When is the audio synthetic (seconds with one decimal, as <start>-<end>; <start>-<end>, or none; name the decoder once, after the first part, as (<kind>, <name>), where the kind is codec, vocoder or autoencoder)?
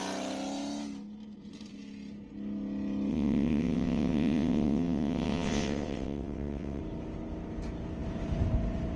3.1-6.8 (vocoder, WaveNeXt)